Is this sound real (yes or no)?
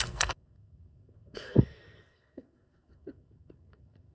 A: no